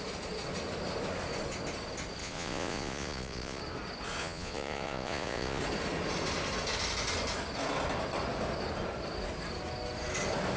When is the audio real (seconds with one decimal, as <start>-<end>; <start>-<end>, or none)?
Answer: 0.0-2.2; 3.6-4.2; 5.6-10.6